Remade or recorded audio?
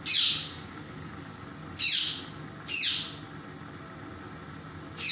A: recorded